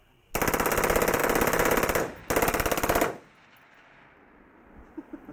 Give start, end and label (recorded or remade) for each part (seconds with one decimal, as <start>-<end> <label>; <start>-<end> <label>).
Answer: 0.0-5.3 recorded